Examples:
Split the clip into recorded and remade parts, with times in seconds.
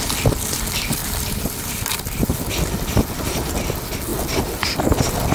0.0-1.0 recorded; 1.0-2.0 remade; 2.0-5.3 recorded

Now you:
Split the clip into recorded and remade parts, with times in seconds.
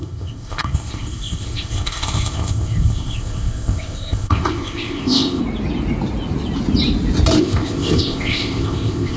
0.0-5.4 remade; 5.4-7.4 recorded; 7.4-9.2 remade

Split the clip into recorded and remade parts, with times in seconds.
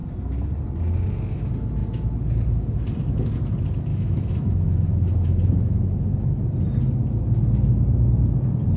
0.0-3.9 recorded; 3.9-6.3 remade; 6.3-8.8 recorded